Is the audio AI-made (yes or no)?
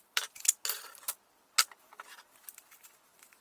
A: no